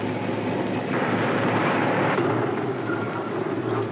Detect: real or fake real